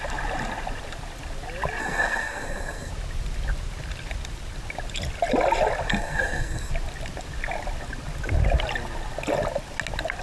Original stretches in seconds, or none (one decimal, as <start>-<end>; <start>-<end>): 0.0-1.8; 2.9-5.9; 6.7-10.2